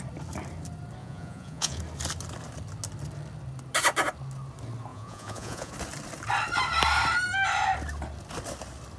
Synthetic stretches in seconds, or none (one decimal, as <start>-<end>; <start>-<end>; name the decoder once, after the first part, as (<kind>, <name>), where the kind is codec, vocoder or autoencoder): 1.0-1.8 (vocoder, Vocos); 4.9-5.7